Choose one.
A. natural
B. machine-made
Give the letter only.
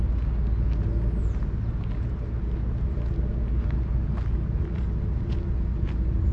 A